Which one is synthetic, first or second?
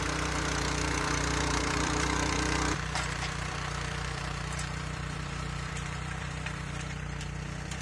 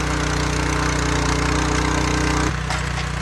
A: first